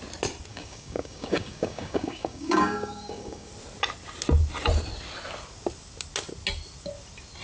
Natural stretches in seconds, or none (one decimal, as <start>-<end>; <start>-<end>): 0.0-0.5; 3.5-7.4